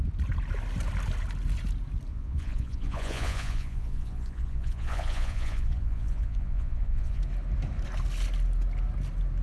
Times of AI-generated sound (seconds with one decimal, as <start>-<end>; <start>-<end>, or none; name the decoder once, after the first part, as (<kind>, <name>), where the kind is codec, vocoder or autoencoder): 2.1-7.2 (vocoder, Vocos)